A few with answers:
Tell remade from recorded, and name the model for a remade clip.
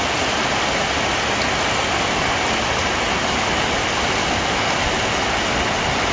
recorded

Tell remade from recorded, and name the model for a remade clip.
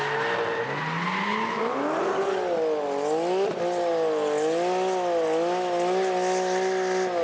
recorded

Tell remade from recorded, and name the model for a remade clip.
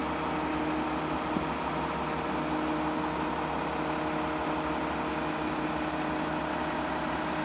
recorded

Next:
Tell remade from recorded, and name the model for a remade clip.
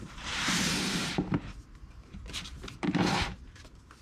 remade, vocoder, BigVGAN v2